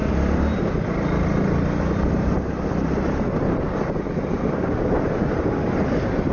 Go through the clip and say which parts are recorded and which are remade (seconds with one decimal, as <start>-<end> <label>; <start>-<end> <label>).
0.0-2.5 remade; 2.5-6.3 recorded